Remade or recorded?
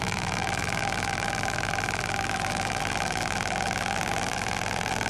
remade